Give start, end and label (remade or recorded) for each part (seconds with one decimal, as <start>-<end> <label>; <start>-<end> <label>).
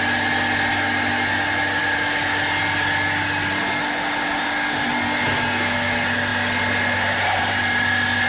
0.0-8.3 recorded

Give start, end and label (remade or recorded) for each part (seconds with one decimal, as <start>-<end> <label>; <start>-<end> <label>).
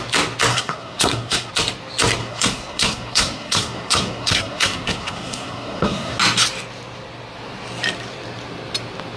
0.0-0.5 recorded; 0.5-1.5 remade; 1.5-2.2 recorded; 2.2-6.2 remade; 6.2-9.2 recorded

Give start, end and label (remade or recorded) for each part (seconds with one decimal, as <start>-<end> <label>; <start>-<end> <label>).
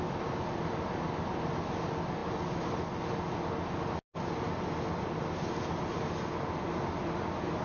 0.0-7.6 recorded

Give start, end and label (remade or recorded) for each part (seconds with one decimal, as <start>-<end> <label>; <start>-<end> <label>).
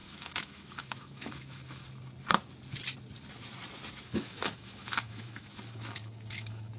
0.0-1.8 remade; 1.8-3.9 recorded; 3.9-6.8 remade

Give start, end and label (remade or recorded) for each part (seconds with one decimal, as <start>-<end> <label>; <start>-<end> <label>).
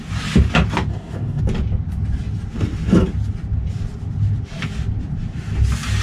0.0-0.9 recorded; 0.9-1.4 remade; 1.4-6.0 recorded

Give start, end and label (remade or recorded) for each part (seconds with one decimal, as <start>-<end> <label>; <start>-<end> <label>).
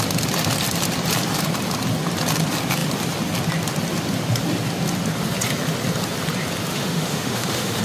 0.0-6.7 recorded; 6.7-7.8 remade